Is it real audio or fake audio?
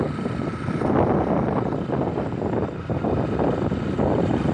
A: real